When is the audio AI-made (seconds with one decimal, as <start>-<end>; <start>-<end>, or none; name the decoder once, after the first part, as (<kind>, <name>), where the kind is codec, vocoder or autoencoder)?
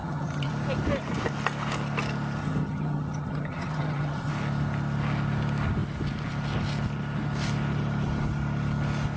0.0-0.5 (vocoder, HiFi-GAN); 2.4-4.3